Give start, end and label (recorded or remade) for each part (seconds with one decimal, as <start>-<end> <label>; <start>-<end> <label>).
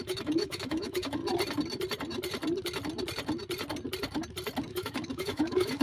0.0-1.2 remade; 1.2-4.7 recorded; 4.7-5.8 remade